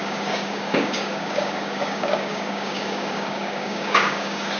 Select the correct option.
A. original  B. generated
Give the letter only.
B